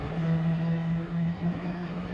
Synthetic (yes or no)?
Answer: yes